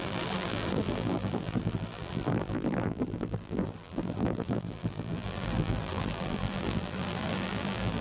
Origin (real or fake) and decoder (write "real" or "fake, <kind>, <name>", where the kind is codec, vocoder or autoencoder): fake, vocoder, BigVGAN v2